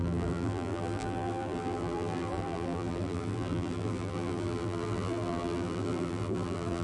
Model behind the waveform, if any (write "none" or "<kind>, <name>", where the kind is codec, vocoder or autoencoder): vocoder, BigVGAN v2